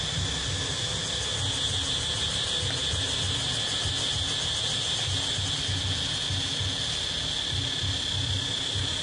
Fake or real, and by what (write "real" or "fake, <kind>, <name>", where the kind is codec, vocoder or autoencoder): real